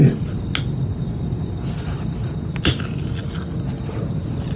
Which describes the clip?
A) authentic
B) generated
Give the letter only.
A